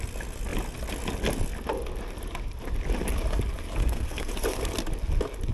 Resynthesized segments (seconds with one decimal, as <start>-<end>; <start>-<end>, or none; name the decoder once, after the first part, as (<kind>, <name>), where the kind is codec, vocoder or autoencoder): 3.8-4.3 (codec, SNAC)